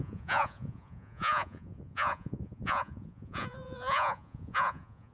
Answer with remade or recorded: remade